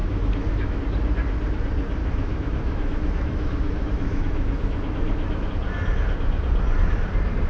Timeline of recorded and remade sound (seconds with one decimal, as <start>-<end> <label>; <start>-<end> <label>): 0.0-0.8 remade; 0.8-2.0 recorded; 2.0-5.5 remade; 5.5-7.5 recorded

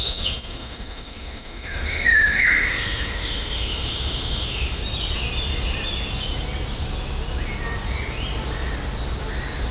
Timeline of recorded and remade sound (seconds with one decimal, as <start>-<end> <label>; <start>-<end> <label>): 0.0-4.8 remade; 4.8-9.7 recorded